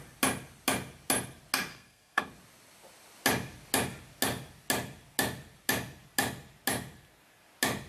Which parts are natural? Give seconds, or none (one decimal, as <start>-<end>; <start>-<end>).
0.0-1.7; 2.2-7.9